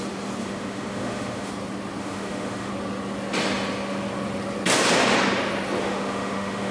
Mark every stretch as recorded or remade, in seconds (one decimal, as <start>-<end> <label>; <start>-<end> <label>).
0.0-0.4 recorded; 0.4-1.5 remade; 1.5-2.0 recorded; 2.0-2.7 remade; 2.7-5.8 recorded; 5.8-6.7 remade